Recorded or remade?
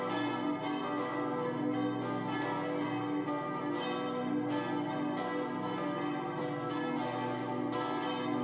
recorded